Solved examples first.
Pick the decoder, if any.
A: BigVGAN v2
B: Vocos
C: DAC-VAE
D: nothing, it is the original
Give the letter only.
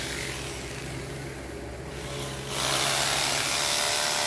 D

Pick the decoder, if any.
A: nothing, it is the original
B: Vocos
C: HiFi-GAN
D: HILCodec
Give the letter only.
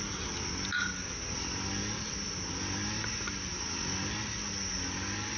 A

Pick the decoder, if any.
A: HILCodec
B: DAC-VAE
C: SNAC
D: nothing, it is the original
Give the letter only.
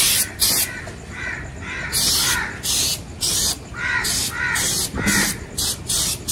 D